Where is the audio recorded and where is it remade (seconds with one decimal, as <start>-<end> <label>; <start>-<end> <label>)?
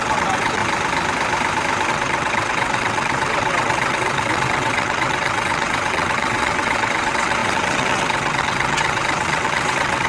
0.0-0.6 remade; 0.6-1.9 recorded; 1.9-10.1 remade